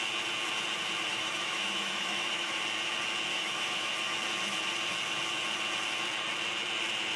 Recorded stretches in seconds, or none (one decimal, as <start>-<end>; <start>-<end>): 0.0-1.1; 2.6-3.3; 3.9-7.2